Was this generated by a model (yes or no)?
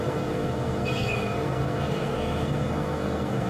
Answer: yes